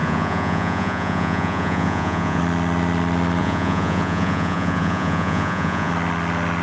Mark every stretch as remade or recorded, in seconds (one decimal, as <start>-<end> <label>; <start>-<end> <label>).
0.0-2.4 remade; 2.4-3.4 recorded; 3.4-5.9 remade; 5.9-6.6 recorded